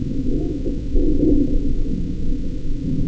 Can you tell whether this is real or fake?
fake